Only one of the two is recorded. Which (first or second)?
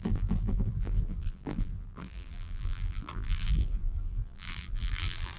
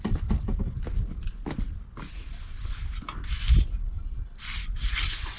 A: second